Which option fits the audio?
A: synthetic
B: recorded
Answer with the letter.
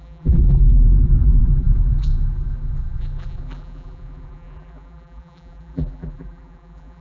A